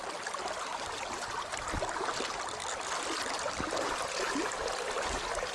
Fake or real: real